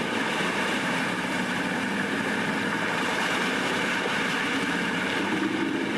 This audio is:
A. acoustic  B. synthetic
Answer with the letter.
B